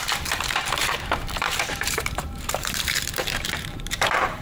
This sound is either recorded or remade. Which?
remade